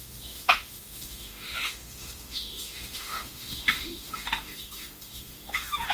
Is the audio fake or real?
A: fake